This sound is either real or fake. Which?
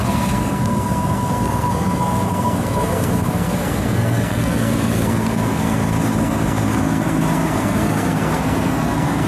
fake